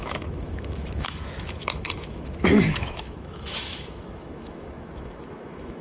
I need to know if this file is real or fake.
fake